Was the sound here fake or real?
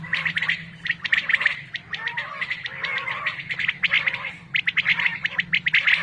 real